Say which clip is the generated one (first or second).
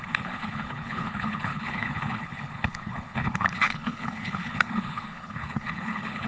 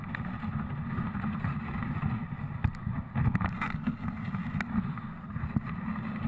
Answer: first